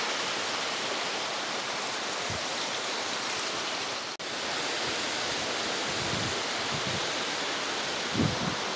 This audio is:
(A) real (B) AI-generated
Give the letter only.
A